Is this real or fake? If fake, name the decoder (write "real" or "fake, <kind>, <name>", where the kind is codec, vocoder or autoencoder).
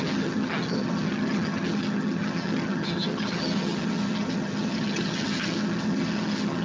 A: fake, vocoder, HiFi-GAN